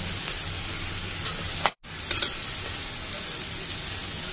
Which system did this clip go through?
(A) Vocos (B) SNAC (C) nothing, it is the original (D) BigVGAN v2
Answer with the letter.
C